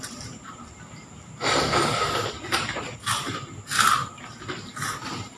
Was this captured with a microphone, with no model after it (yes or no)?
no